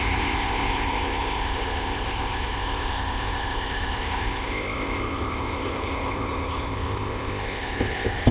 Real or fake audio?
fake